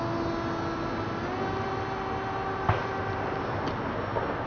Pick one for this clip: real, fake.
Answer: real